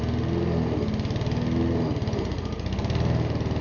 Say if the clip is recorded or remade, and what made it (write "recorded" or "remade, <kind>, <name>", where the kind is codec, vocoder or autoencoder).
recorded